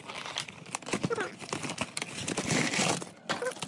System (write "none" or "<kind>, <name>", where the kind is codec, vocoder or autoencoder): none